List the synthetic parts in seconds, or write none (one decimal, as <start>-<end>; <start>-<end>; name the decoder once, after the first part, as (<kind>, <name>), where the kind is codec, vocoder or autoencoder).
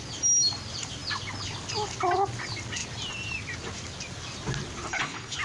4.9-5.4 (codec, HILCodec)